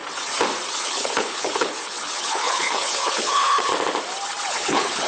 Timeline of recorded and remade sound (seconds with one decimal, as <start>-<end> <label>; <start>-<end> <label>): 0.0-0.8 recorded; 0.8-3.7 remade; 3.7-4.5 recorded; 4.5-5.1 remade